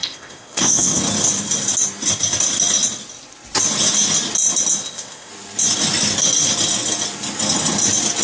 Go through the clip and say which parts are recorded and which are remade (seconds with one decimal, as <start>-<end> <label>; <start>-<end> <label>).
0.0-1.0 remade; 1.0-4.8 recorded; 4.8-5.3 remade; 5.3-8.2 recorded